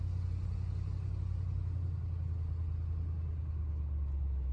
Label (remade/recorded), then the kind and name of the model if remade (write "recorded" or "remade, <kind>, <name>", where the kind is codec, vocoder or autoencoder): recorded